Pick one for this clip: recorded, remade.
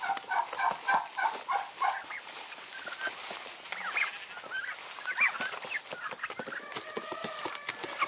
recorded